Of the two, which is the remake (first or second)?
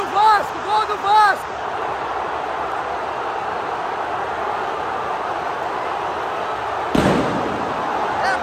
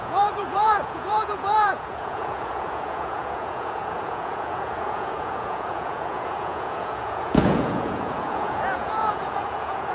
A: second